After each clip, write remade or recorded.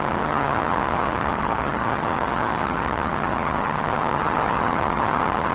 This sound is remade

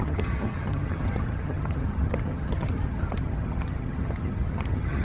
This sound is remade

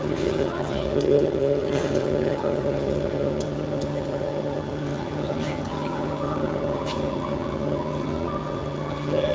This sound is remade